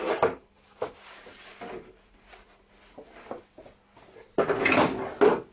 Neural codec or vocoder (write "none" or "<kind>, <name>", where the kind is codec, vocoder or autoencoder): none